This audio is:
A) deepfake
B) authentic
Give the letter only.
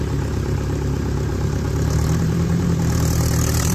A